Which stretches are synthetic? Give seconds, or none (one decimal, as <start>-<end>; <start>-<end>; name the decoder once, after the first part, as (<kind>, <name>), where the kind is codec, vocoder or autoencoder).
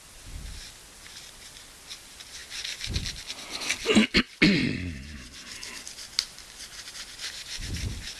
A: none